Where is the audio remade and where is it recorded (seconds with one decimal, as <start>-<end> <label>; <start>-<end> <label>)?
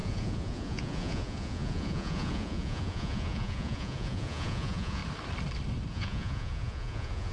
0.0-5.0 remade; 5.0-5.9 recorded; 5.9-7.3 remade